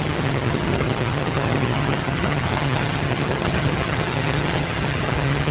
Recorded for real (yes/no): no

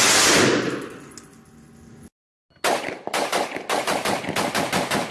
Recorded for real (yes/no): yes